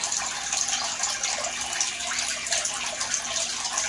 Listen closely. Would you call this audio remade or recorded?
recorded